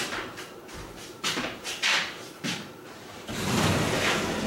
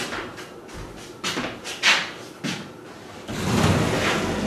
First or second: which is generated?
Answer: first